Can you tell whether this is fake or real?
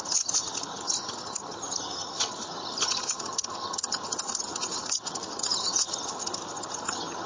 fake